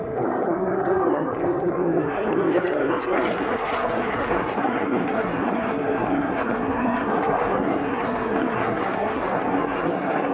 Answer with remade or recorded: remade